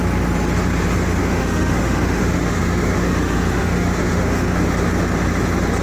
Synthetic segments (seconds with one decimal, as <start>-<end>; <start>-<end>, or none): 1.2-4.7